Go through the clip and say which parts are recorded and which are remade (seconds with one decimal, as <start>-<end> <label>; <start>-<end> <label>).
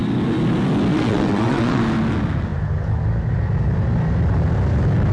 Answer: 0.0-0.9 recorded; 0.9-1.8 remade; 1.8-5.1 recorded